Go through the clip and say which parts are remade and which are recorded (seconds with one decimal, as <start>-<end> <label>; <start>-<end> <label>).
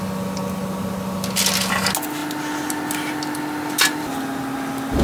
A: 0.0-5.0 recorded